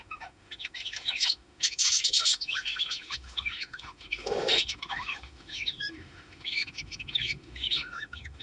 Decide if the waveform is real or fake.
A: fake